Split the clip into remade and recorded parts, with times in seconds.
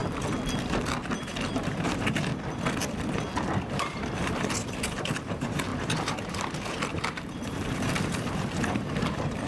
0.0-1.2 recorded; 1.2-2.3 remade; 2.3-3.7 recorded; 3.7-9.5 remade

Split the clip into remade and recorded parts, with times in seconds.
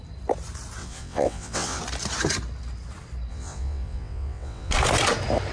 0.0-0.8 recorded; 0.8-1.8 remade; 1.8-3.3 recorded; 3.3-4.7 remade; 4.7-5.5 recorded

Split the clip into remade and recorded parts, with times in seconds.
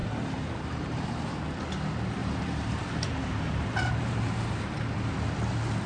0.0-1.4 remade; 1.4-2.2 recorded; 2.2-4.8 remade; 4.8-5.9 recorded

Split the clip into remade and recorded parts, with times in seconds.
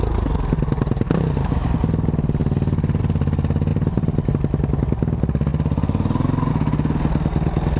0.0-3.7 recorded; 3.7-4.3 remade; 4.3-7.8 recorded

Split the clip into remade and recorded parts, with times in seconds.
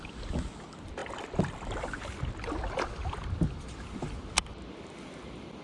0.0-5.6 recorded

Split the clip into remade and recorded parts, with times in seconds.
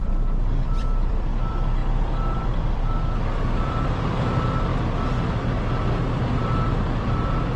0.0-4.7 remade; 4.7-5.9 recorded; 5.9-6.4 remade; 6.4-7.0 recorded; 7.0-7.6 remade